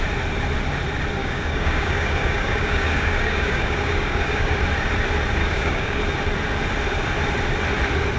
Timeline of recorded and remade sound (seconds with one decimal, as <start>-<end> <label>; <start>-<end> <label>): 0.0-1.2 recorded; 1.2-4.6 remade; 4.6-5.4 recorded; 5.4-6.0 remade; 6.0-8.2 recorded